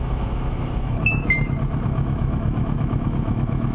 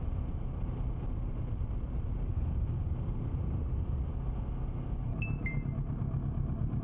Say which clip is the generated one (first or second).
first